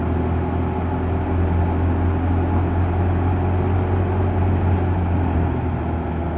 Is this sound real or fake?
real